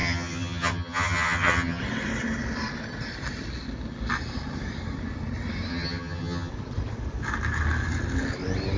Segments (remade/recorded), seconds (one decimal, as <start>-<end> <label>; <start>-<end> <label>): 0.0-1.8 remade; 1.8-5.7 recorded; 5.7-6.5 remade; 6.5-8.8 recorded